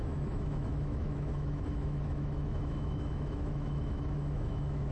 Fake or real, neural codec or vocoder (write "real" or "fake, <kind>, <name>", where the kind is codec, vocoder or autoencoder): fake, autoencoder, DAC-VAE